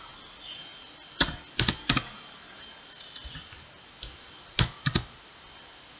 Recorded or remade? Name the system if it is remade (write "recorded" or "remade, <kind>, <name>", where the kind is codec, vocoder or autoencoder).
recorded